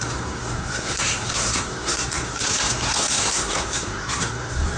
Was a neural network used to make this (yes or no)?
yes